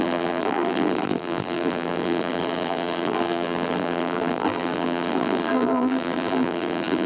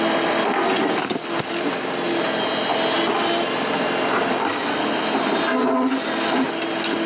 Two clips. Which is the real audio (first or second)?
second